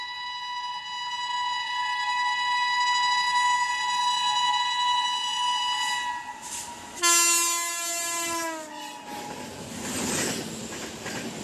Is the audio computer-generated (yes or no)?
no